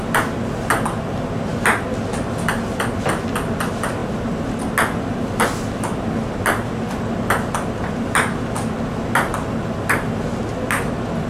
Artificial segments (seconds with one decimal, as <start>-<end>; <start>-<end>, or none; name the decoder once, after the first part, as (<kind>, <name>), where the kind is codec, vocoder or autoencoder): none